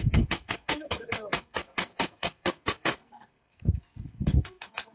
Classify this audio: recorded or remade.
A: remade